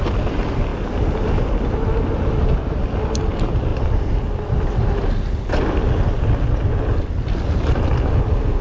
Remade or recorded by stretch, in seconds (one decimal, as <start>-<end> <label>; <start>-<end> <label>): 0.0-8.6 recorded